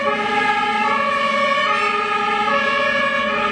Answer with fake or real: real